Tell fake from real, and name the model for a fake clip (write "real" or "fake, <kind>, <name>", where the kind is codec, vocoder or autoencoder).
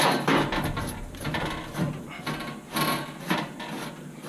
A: real